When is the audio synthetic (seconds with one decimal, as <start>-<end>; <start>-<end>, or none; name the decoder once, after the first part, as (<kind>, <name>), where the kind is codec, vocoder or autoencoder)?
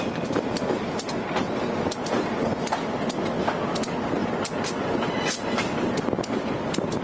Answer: none